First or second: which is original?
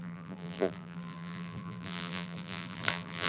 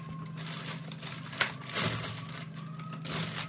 second